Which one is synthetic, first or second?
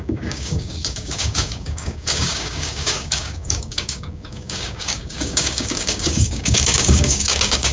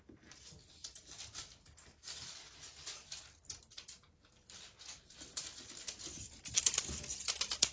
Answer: first